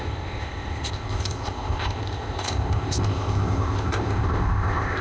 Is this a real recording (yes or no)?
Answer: no